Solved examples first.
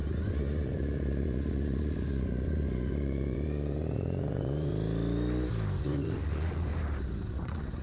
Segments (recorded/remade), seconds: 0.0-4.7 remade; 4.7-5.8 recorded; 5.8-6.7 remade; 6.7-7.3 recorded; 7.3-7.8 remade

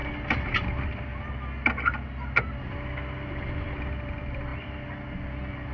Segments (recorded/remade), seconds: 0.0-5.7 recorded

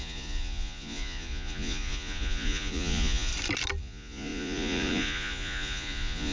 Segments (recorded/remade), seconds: 0.0-3.3 remade; 3.3-3.8 recorded; 3.8-6.3 remade

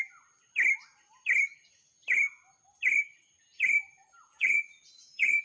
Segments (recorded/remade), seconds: 0.0-4.3 recorded; 4.3-5.4 remade